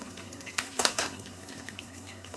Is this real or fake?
fake